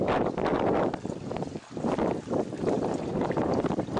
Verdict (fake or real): real